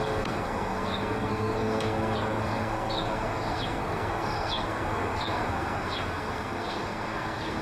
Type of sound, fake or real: fake